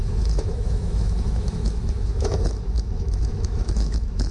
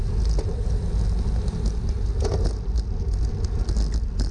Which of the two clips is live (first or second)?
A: second